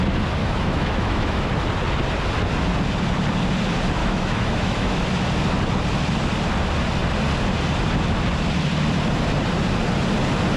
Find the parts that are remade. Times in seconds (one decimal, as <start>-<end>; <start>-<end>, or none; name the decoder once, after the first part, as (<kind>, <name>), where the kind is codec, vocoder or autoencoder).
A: 0.4-1.5 (autoencoder, DAC-VAE); 4.0-5.0